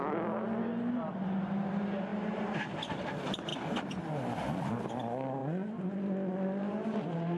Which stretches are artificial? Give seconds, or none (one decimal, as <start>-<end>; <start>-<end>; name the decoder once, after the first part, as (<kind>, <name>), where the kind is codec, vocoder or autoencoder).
none